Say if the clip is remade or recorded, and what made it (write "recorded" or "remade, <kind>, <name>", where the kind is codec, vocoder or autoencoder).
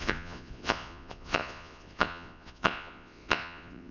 remade, vocoder, Vocos